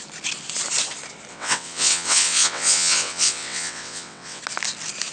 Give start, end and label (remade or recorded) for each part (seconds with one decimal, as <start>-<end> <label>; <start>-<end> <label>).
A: 0.0-1.3 recorded; 1.3-4.4 remade; 4.4-5.1 recorded